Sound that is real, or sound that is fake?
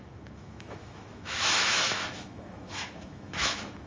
fake